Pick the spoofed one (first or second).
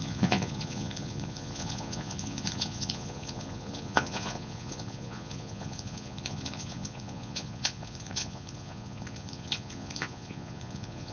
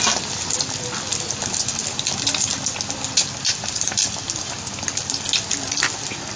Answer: first